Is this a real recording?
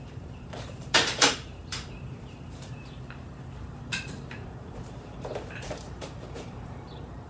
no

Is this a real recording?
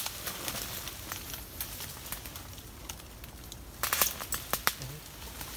yes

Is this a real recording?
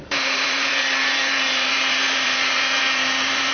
no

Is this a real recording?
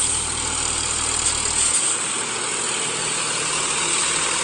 yes